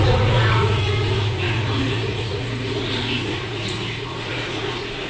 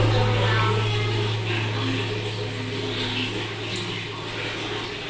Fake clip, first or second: first